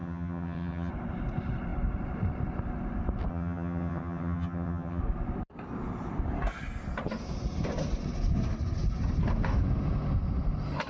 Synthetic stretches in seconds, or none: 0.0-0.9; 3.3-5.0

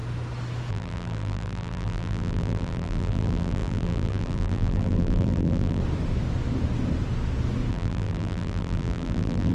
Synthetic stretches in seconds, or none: 0.7-5.8; 7.7-9.5

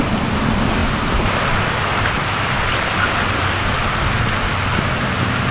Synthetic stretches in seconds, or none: none

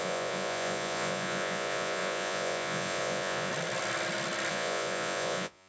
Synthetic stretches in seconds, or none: 0.0-3.5; 4.5-5.7